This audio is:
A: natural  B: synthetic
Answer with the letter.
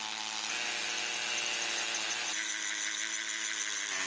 A